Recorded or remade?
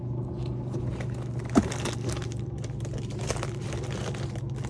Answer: recorded